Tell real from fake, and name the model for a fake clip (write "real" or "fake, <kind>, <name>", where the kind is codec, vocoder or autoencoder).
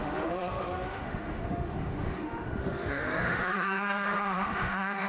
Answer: fake, autoencoder, DAC-VAE